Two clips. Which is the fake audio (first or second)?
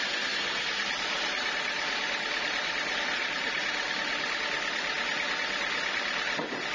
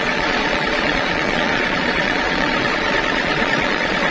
second